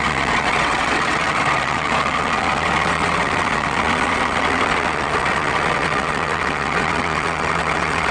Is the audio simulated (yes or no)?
yes